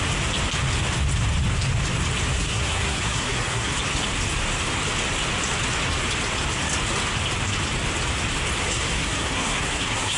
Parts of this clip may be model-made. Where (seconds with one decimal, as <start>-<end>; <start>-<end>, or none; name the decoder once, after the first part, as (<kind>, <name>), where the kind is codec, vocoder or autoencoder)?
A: 2.3-3.7 (codec, SNAC); 8.6-10.2